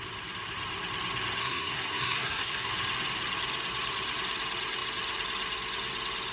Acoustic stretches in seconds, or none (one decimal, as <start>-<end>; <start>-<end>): 0.0-1.4; 2.7-6.3